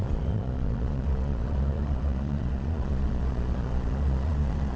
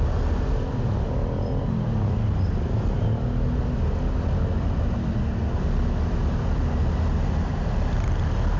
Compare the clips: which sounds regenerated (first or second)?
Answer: first